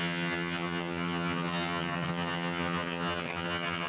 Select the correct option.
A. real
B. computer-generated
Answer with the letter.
B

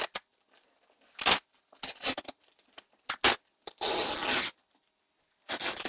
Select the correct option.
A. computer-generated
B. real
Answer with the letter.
B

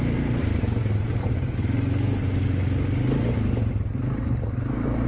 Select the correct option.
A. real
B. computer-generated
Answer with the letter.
A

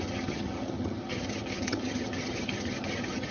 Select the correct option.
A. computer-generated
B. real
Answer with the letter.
A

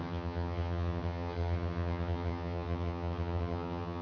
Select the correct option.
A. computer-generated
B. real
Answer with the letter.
A